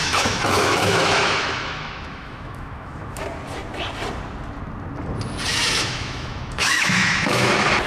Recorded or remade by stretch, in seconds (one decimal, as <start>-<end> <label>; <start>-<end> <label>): 0.0-3.2 remade; 3.2-5.5 recorded; 5.5-7.5 remade; 7.5-7.9 recorded